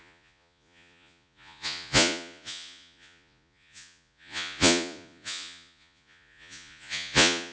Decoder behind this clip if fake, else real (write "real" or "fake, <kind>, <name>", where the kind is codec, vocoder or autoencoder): fake, vocoder, Vocos